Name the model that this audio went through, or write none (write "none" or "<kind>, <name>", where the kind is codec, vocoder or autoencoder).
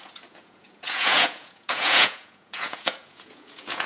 vocoder, Vocos